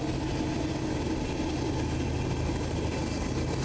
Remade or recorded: recorded